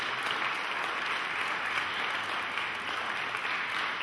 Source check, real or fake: real